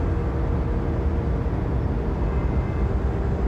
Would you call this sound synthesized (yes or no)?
no